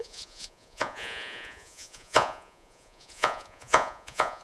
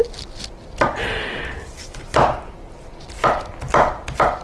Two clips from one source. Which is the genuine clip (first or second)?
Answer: second